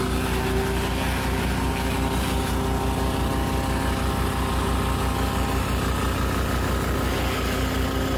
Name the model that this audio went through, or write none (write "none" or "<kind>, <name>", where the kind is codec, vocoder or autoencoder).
none